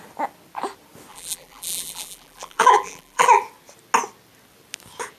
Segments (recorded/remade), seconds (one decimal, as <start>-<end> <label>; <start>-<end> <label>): 0.0-1.1 recorded; 1.1-3.4 remade; 3.4-5.2 recorded